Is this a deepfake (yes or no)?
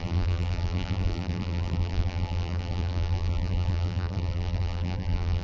yes